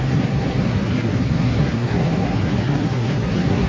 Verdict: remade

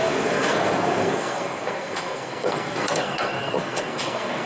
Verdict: remade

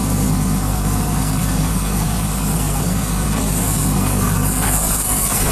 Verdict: remade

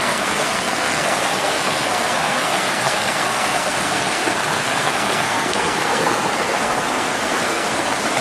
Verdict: remade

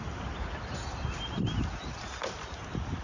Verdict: recorded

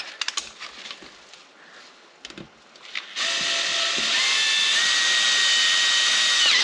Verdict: recorded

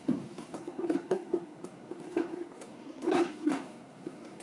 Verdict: remade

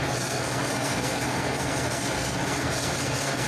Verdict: remade